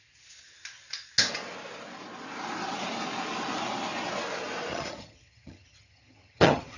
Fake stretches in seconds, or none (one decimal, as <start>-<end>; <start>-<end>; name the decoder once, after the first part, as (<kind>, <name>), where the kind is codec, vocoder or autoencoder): 4.7-6.8 (vocoder, HiFi-GAN)